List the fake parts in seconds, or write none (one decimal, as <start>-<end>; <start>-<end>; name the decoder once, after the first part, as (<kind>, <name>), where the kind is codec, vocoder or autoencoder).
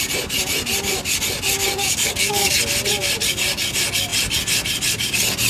1.8-2.5 (codec, DAC)